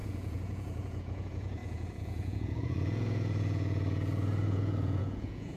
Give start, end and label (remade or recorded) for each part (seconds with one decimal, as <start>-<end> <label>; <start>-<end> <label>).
0.0-5.6 remade